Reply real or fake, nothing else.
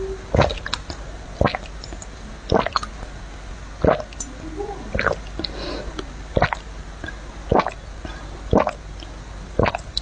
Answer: real